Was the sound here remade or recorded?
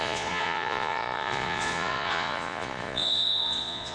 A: remade